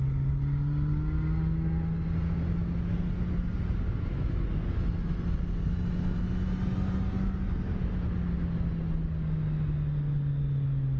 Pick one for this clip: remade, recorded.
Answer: recorded